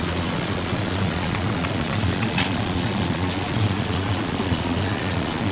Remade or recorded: remade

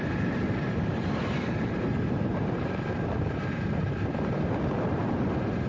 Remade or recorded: remade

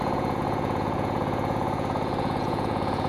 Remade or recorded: remade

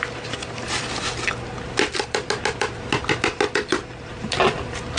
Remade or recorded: recorded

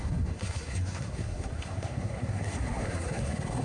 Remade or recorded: remade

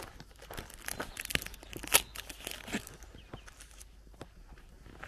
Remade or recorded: recorded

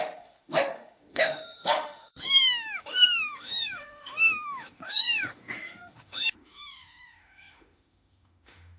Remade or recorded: remade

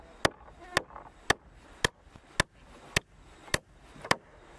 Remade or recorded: recorded